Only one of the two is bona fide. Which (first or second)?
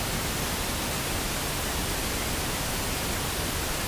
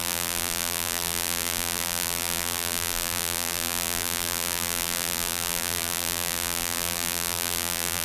first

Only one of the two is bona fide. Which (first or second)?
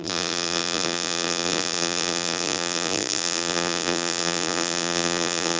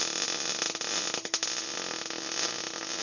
second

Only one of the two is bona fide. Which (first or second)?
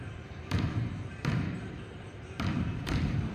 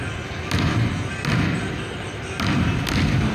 second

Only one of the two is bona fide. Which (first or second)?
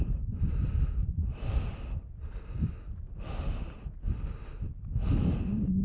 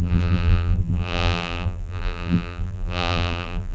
first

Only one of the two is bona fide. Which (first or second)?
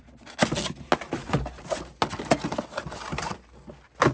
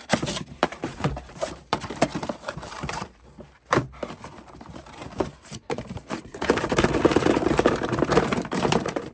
first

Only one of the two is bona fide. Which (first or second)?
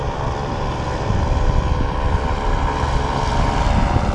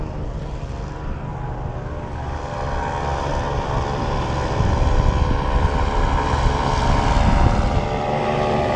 second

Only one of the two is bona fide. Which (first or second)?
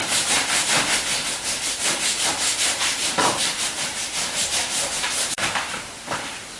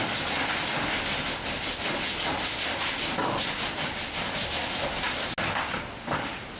second